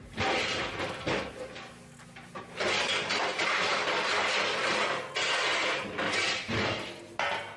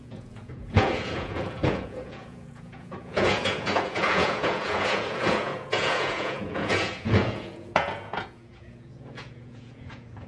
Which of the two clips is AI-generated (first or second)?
second